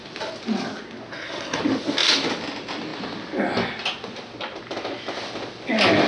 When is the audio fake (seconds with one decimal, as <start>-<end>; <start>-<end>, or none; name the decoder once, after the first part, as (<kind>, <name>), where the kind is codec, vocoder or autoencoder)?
1.1-1.6 (codec, SNAC)

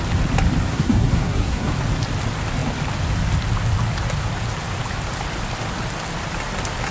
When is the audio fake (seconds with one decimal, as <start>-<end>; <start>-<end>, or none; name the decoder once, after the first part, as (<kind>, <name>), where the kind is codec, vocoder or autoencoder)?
0.7-1.7 (codec, SNAC)